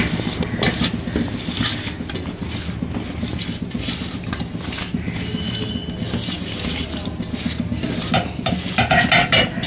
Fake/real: real